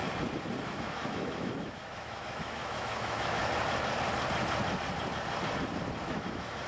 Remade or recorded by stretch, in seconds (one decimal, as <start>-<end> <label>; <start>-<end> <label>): 0.0-0.6 recorded; 0.6-3.4 remade; 3.4-6.0 recorded; 6.0-6.7 remade